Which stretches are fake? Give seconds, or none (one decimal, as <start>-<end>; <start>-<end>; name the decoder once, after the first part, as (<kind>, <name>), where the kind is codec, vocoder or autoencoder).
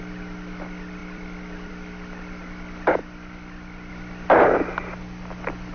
1.0-1.7 (vocoder, BigVGAN v2); 3.0-3.9